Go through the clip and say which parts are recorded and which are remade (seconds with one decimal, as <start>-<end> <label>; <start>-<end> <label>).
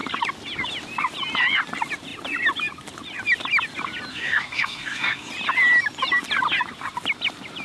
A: 0.0-4.1 recorded; 4.1-5.3 remade; 5.3-7.6 recorded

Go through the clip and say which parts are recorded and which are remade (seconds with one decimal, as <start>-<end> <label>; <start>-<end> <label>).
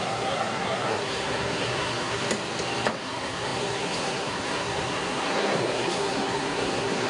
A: 0.0-2.2 remade; 2.2-2.9 recorded; 2.9-7.1 remade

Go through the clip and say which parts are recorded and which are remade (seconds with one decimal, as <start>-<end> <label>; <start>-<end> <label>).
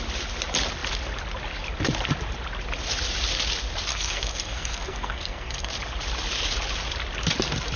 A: 0.0-3.9 recorded; 3.9-5.7 remade; 5.7-7.8 recorded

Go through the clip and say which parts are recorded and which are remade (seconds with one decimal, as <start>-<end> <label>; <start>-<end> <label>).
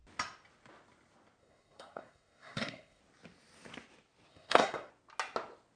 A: 0.0-1.4 recorded; 1.4-3.0 remade; 3.0-4.3 recorded; 4.3-4.9 remade; 4.9-5.8 recorded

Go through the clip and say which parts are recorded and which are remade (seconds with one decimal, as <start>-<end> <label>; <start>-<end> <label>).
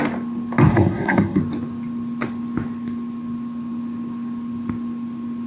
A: 0.0-0.7 recorded; 0.7-1.4 remade; 1.4-5.5 recorded